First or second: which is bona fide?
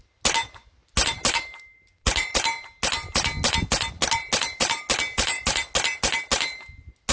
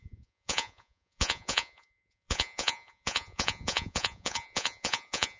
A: first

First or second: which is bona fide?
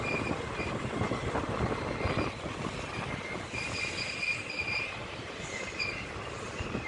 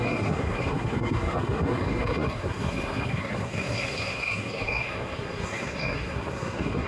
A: first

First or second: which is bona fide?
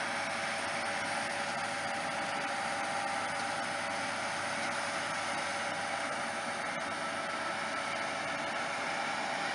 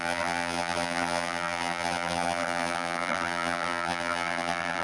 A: first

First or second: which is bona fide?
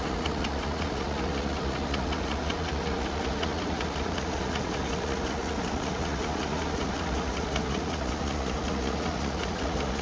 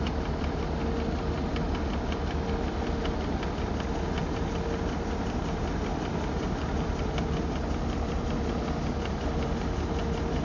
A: second